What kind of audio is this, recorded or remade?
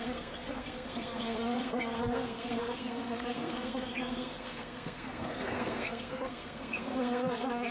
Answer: remade